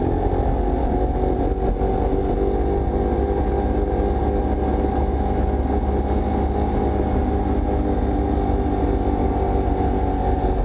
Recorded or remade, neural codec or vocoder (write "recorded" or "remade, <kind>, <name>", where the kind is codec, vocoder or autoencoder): recorded